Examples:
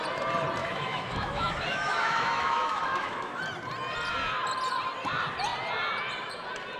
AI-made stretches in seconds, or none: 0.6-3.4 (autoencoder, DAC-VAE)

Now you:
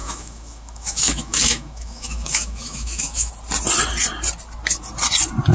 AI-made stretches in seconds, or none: 0.0-3.3 (autoencoder, DAC-VAE)

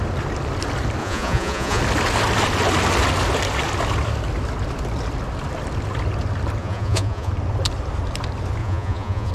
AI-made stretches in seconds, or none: 1.0-1.8 (vocoder, Vocos); 6.6-7.3; 8.6-9.3

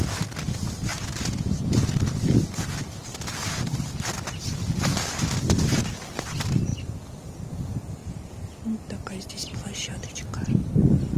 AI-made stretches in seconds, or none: 0.9-1.6 (vocoder, BigVGAN v2); 3.4-3.9; 8.0-9.3